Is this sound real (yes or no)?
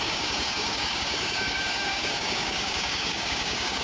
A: no